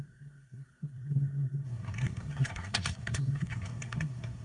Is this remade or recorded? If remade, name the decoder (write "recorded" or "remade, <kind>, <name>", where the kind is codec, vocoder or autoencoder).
remade, codec, SNAC